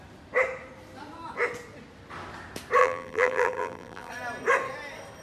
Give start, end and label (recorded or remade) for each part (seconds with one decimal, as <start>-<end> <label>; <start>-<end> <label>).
0.0-2.8 recorded; 2.8-4.1 remade; 4.1-5.2 recorded